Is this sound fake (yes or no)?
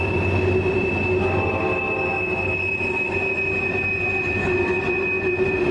no